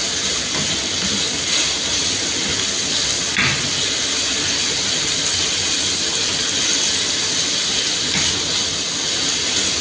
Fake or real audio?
real